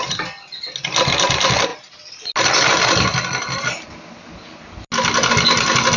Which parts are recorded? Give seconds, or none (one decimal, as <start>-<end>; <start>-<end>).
0.0-6.0